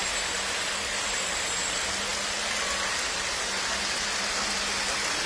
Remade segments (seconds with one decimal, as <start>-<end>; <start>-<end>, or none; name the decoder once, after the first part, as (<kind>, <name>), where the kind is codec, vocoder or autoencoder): none